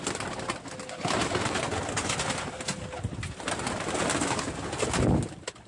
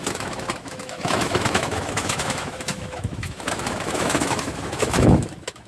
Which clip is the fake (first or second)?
second